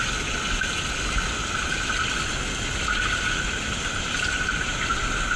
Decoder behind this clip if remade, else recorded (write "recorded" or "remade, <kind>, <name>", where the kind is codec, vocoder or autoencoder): recorded